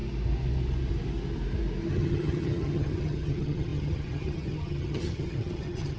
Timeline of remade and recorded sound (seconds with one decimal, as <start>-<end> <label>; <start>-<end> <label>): 0.0-1.9 recorded; 1.9-6.0 remade